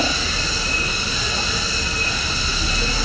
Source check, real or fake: real